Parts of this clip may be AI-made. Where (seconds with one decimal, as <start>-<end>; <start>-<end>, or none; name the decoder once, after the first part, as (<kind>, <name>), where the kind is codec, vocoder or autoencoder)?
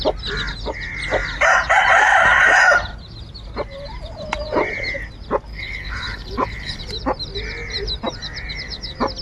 5.5-6.8 (codec, HILCodec)